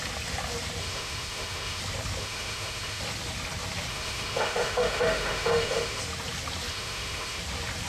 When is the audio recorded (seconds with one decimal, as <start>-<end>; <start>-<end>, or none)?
0.0-0.8; 1.8-2.2; 3.0-3.9; 6.0-6.7; 7.4-7.9